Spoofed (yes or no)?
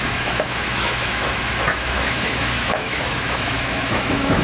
yes